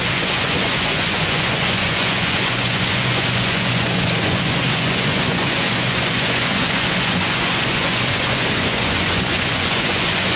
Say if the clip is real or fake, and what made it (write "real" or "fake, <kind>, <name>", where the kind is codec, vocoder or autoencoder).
fake, vocoder, Vocos